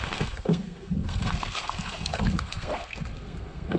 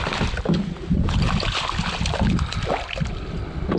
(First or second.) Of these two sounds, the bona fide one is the second